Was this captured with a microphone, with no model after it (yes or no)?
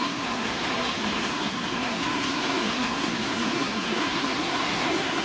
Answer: no